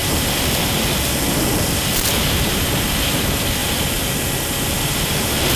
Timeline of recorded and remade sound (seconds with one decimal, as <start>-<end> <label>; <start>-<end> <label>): 0.0-5.6 remade